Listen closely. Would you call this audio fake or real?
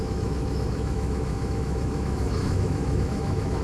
fake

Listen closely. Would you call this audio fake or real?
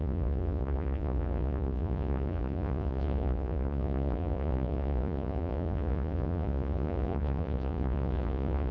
fake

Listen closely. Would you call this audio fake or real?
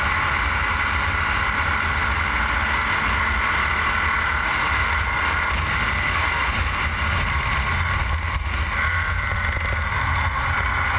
real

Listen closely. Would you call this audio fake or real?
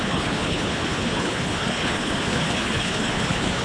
fake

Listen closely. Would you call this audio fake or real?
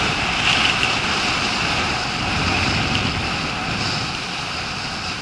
real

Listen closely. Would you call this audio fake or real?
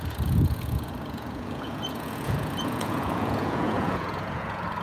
fake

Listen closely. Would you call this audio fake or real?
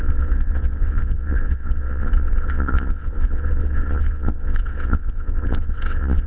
fake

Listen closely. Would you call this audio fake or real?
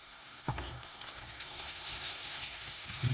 fake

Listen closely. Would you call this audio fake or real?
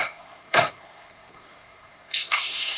fake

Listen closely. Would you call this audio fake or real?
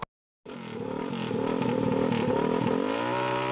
real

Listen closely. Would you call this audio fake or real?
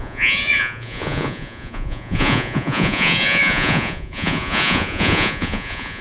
fake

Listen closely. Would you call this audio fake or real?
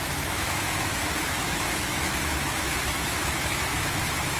fake